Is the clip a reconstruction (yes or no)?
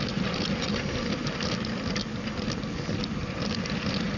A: no